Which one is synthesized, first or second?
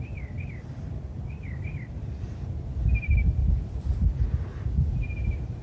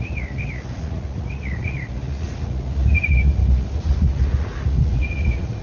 second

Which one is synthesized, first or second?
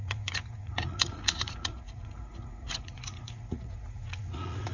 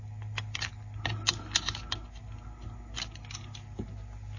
first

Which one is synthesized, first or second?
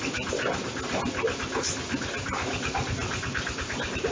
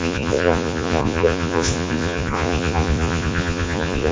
second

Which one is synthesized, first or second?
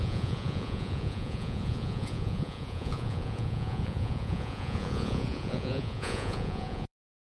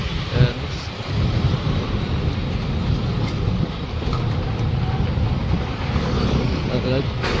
first